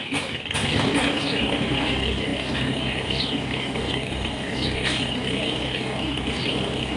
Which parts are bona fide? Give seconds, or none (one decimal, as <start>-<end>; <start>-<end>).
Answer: none